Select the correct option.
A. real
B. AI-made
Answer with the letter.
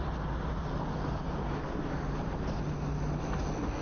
A